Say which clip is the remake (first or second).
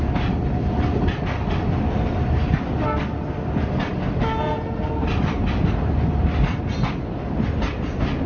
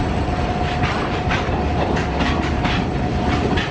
second